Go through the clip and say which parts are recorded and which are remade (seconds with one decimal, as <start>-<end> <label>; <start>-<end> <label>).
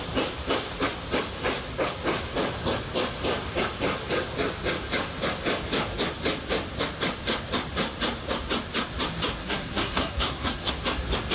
0.0-9.4 recorded; 9.4-10.7 remade; 10.7-11.3 recorded